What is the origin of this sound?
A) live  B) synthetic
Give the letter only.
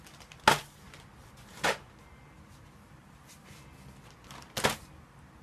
A